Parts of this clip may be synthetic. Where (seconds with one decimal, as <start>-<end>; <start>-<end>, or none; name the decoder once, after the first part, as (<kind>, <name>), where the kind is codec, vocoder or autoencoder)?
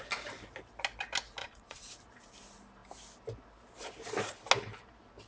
1.4-1.9 (vocoder, Vocos)